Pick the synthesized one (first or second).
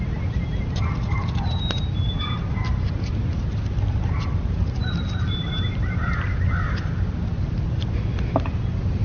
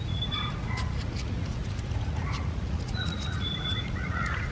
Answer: second